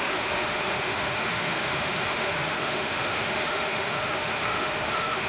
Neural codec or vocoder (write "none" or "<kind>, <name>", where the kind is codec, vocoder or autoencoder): autoencoder, DAC-VAE